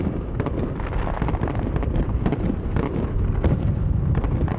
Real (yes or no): yes